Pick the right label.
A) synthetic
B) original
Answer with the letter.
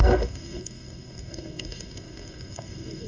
A